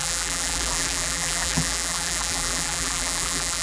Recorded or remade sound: remade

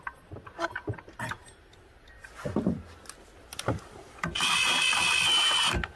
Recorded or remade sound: recorded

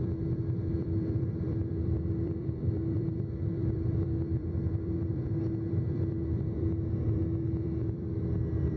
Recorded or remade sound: remade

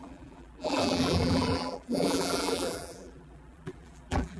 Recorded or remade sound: remade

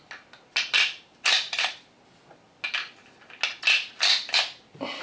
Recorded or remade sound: recorded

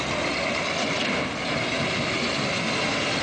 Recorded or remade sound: recorded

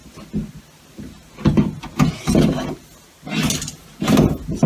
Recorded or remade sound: recorded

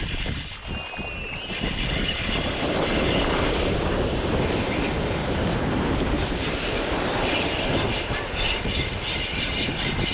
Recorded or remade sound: remade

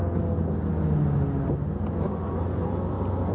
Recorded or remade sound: recorded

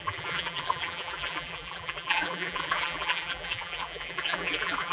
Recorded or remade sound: remade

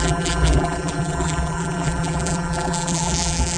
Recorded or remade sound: remade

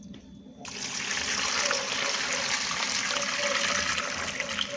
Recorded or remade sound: recorded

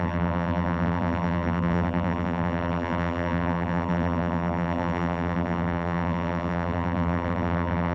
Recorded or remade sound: remade